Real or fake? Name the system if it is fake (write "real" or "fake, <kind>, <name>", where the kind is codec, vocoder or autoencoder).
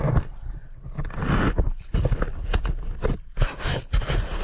real